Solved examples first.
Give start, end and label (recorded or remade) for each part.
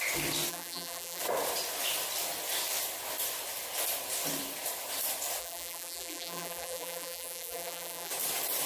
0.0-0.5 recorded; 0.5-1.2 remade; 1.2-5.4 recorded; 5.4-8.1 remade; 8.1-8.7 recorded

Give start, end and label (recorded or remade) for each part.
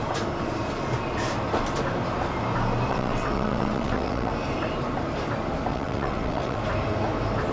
0.0-2.9 recorded; 2.9-4.3 remade; 4.3-5.7 recorded; 5.7-6.6 remade; 6.6-7.5 recorded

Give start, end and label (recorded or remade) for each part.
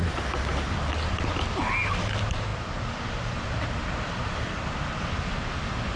0.0-6.0 recorded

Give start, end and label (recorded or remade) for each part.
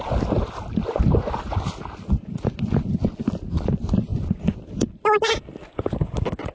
0.0-6.5 recorded